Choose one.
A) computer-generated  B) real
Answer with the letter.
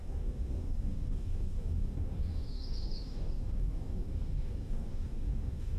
A